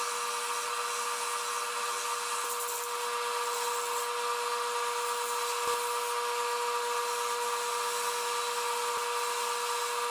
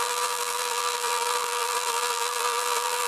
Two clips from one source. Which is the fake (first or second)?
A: second